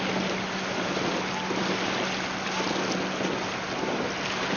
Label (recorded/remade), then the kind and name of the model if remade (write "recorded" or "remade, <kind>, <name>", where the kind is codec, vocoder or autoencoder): recorded